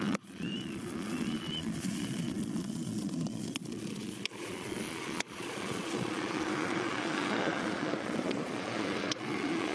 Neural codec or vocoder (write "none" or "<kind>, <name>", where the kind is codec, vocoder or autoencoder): vocoder, Vocos